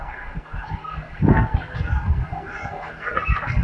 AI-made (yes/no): yes